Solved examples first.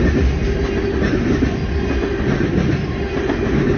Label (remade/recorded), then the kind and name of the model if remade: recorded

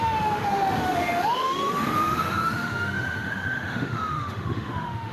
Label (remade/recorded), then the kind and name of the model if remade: remade, autoencoder, DAC-VAE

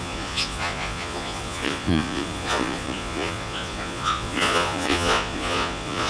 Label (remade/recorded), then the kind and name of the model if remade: remade, vocoder, Vocos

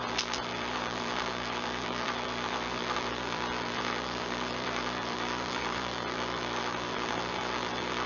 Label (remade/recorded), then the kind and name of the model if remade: remade, vocoder, BigVGAN v2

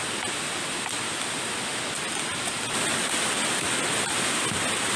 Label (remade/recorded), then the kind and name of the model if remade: recorded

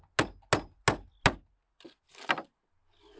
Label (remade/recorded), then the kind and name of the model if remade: recorded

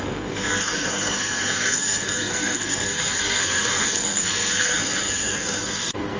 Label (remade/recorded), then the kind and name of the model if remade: remade, codec, SNAC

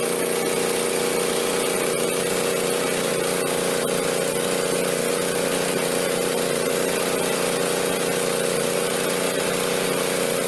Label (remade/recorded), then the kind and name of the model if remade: recorded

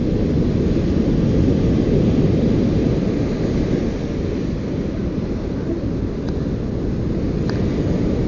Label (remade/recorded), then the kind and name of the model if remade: recorded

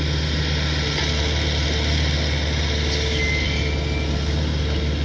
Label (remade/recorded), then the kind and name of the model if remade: recorded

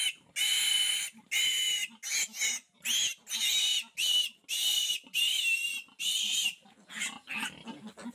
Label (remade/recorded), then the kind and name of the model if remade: recorded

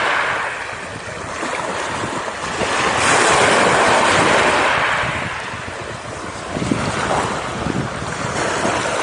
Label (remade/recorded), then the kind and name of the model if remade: recorded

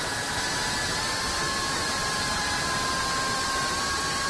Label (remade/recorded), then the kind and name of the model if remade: recorded